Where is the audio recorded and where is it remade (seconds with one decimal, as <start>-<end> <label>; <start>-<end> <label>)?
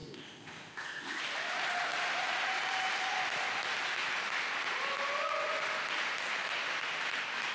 0.0-1.2 remade; 1.2-7.5 recorded